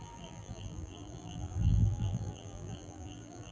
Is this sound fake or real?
fake